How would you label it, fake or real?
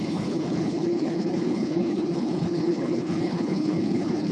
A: fake